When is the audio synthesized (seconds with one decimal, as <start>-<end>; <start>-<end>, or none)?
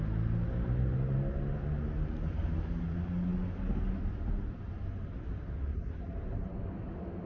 none